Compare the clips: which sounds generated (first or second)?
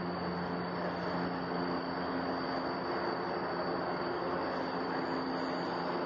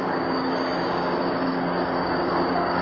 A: second